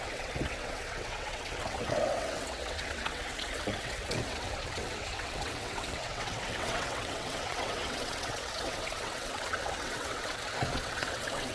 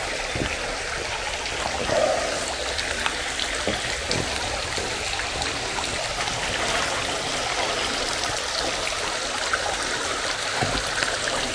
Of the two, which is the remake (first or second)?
first